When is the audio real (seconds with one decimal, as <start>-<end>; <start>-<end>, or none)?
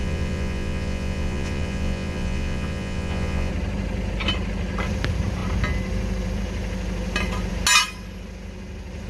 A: 3.5-9.1